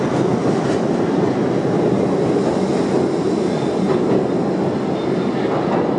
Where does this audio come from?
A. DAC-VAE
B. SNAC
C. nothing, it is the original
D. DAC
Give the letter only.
C